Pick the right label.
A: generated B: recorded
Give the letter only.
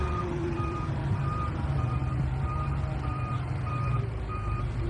A